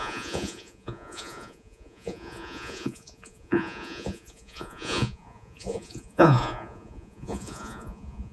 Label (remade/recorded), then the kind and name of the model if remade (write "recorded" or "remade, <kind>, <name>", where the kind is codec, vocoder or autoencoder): remade, vocoder, Vocos